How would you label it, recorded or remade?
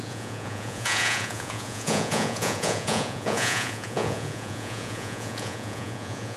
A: remade